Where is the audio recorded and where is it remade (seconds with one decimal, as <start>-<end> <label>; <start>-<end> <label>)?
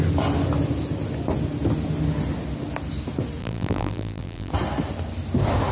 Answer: 0.0-3.4 recorded; 3.4-4.5 remade; 4.5-5.7 recorded